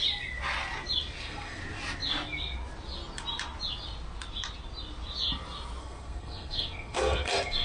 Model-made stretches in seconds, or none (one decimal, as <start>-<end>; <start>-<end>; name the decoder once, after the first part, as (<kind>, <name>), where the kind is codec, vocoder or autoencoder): 1.2-1.6 (codec, SNAC); 5.8-7.6